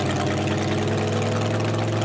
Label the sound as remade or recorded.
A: recorded